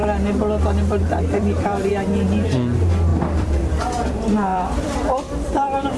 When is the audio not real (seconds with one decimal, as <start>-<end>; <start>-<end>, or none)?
1.0-1.9; 3.1-3.8; 4.5-6.0